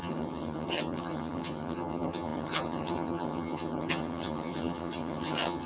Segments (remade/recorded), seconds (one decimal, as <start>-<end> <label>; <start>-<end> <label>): 0.0-5.7 remade